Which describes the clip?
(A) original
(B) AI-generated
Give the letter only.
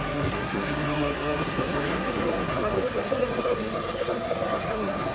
B